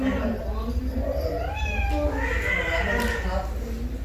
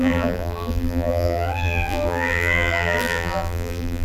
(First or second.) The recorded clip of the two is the first